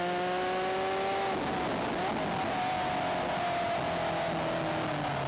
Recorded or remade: recorded